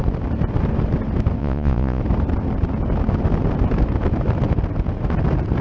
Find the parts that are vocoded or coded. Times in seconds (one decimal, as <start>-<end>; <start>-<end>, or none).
1.4-2.0